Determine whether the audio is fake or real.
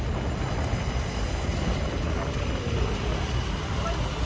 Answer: real